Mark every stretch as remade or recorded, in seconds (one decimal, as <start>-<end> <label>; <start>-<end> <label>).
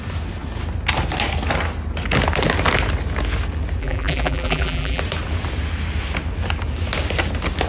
0.0-3.8 recorded; 3.8-5.0 remade; 5.0-7.7 recorded